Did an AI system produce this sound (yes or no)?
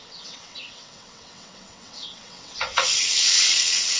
yes